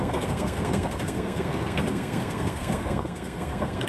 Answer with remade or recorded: remade